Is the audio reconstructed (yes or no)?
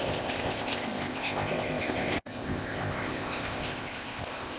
yes